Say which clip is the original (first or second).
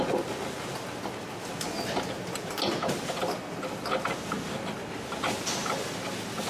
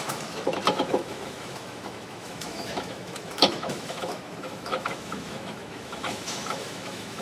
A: first